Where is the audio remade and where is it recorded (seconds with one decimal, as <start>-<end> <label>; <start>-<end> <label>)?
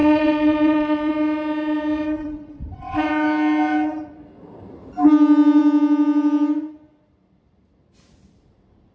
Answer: 0.0-1.1 remade; 1.1-2.2 recorded; 2.2-3.1 remade; 3.1-8.9 recorded